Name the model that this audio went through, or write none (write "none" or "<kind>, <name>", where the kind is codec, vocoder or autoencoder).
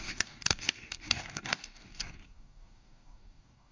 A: codec, DAC